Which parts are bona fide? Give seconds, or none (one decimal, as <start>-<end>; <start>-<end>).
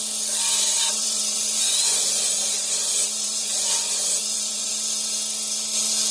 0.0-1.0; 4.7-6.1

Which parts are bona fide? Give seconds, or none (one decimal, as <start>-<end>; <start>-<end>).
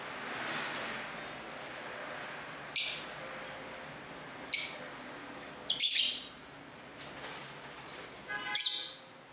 0.0-9.3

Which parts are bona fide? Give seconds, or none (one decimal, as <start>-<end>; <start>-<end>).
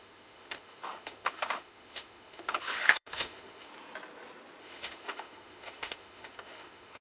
3.7-4.6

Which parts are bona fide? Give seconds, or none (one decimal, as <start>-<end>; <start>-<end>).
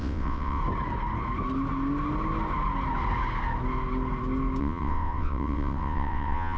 0.6-4.6